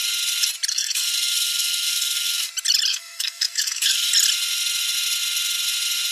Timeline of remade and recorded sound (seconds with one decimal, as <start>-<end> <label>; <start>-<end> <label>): 0.0-0.7 recorded; 0.7-2.5 remade; 2.5-2.9 recorded; 2.9-4.1 remade; 4.1-6.1 recorded